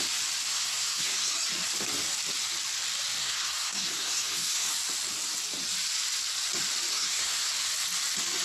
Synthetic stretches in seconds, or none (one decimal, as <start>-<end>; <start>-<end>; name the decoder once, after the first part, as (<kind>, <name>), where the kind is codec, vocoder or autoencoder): 0.5-1.3 (codec, SNAC); 3.2-4.7; 6.9-7.5